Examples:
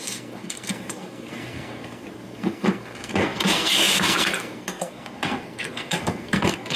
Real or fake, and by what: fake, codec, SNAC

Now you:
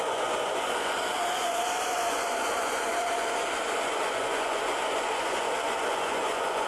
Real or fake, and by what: fake, vocoder, Vocos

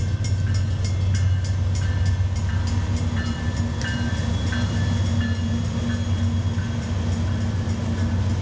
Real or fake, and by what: real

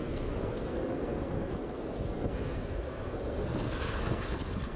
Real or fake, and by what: fake, codec, SNAC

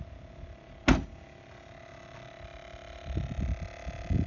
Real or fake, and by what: real